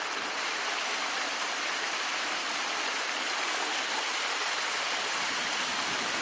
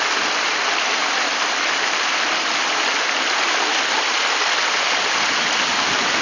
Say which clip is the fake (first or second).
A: first